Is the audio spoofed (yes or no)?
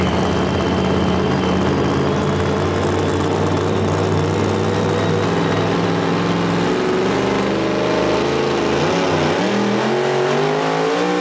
no